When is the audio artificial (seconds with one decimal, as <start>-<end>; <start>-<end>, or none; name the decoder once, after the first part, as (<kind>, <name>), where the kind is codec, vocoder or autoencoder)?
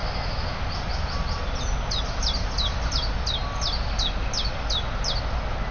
none